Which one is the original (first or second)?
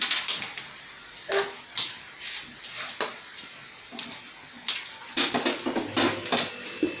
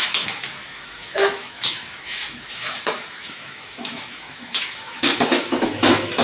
first